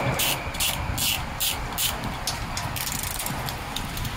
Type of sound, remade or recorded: recorded